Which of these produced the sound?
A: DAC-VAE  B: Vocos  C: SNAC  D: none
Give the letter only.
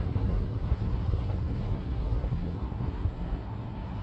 C